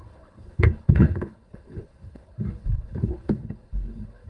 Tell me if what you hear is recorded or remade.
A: remade